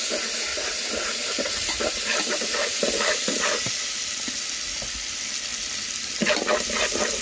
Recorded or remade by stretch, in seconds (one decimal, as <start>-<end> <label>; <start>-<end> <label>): 0.0-0.5 recorded; 0.5-3.7 remade; 3.7-5.5 recorded; 5.5-6.2 remade; 6.2-7.2 recorded